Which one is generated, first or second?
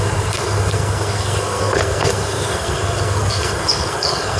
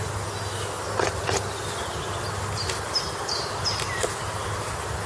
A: first